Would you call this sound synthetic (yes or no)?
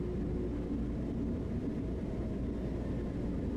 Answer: no